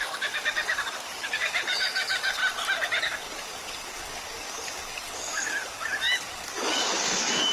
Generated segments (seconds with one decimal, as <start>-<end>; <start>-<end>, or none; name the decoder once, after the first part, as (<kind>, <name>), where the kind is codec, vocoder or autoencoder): 0.0-2.4 (codec, DAC); 3.0-7.5